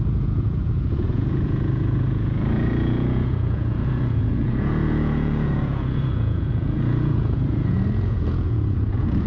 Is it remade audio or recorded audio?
remade